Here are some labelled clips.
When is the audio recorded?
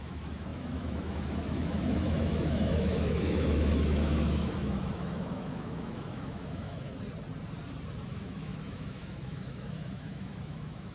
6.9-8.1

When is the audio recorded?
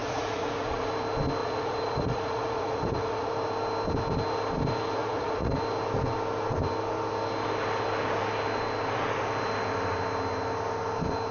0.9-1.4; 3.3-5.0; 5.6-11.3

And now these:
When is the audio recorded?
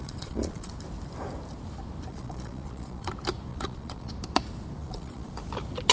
0.7-2.1; 3.1-3.5; 4.1-4.8; 5.3-5.9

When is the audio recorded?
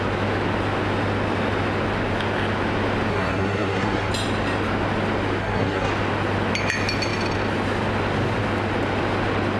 0.0-3.1; 4.1-5.4; 5.9-9.6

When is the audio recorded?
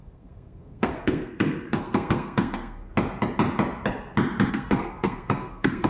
2.9-4.5